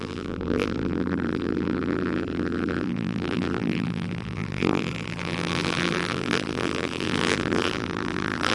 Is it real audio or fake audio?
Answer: fake